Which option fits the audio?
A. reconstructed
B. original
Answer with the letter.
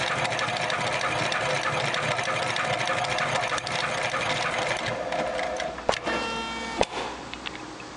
B